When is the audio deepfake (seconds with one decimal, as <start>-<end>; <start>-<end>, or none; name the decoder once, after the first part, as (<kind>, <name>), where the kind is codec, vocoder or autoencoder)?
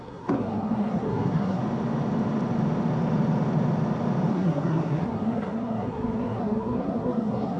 0.0-1.6 (codec, SNAC); 4.3-7.6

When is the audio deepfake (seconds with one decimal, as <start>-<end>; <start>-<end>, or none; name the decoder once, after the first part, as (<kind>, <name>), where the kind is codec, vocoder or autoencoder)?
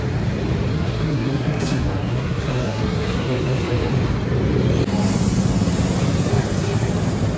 0.7-3.9 (codec, SNAC); 6.3-6.9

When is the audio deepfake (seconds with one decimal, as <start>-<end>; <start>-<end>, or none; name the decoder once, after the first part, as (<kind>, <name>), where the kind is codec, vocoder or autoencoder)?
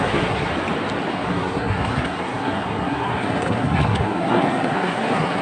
0.0-0.5 (codec, SNAC); 1.1-5.4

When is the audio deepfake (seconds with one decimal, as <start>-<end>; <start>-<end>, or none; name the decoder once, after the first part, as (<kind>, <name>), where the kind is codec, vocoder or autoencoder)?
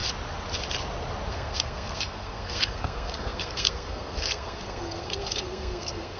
1.3-6.2 (codec, SNAC)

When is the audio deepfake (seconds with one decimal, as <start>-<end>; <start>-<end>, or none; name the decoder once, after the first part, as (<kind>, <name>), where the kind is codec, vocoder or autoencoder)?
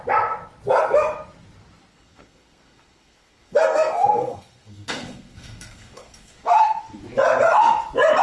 1.9-6.8 (codec, SNAC)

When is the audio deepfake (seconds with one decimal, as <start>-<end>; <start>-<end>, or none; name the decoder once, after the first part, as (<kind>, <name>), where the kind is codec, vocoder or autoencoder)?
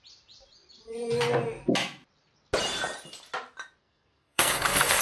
3.8-5.0 (codec, SNAC)